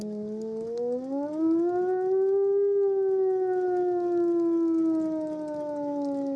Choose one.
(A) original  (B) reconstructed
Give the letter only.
A